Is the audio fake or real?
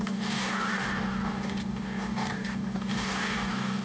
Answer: fake